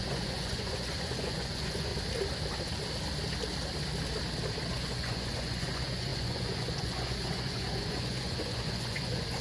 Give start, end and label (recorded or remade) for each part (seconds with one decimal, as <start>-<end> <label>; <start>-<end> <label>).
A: 0.0-1.9 remade; 1.9-4.7 recorded; 4.7-9.4 remade